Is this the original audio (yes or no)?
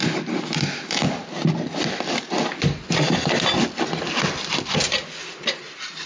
yes